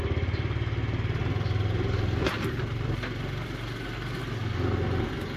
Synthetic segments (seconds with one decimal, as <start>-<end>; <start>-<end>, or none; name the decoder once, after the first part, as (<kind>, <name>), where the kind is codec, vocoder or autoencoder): none